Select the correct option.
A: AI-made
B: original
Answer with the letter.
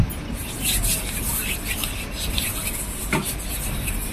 B